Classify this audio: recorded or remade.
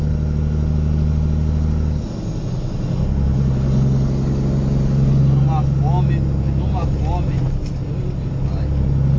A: recorded